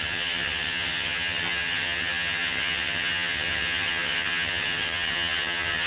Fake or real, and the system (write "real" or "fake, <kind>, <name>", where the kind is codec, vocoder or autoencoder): fake, vocoder, HiFi-GAN